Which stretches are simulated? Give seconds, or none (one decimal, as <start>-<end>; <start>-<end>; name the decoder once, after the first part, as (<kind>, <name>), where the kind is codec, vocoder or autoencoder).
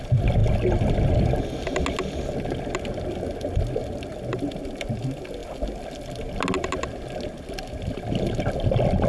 none